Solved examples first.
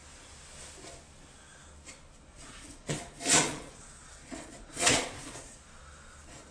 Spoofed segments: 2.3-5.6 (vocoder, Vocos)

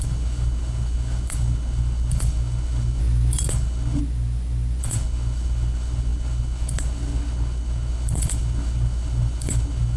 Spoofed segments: 0.0-3.0 (codec, HILCodec); 3.5-4.0; 4.8-10.0

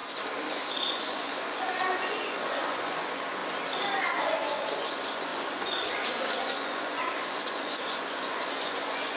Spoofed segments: 0.9-3.4 (vocoder, Vocos); 4.2-9.2